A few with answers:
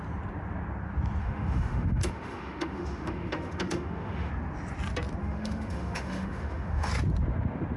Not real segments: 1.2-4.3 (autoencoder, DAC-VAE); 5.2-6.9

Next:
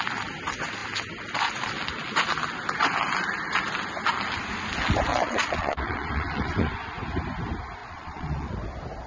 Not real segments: 5.1-6.7 (vocoder, Vocos); 7.8-8.5

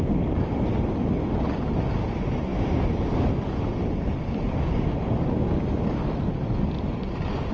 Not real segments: none

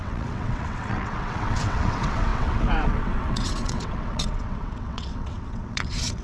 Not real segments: 0.0-6.2 (vocoder, WaveNeXt)